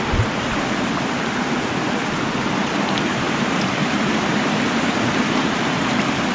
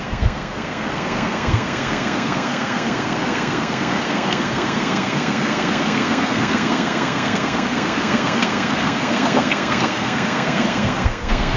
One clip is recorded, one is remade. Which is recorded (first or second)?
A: first